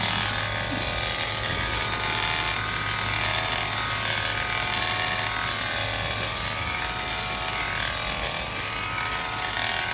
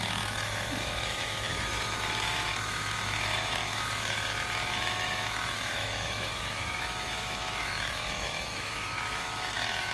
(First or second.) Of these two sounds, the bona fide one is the first